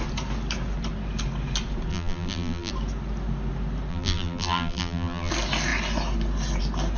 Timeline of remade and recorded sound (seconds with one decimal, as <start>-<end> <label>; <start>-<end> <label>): 0.0-1.9 recorded; 1.9-2.7 remade; 2.7-3.9 recorded; 3.9-5.3 remade; 5.3-7.0 recorded